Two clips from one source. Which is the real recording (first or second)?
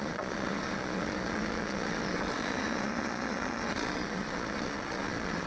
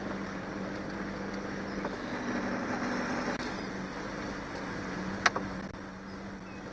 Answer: second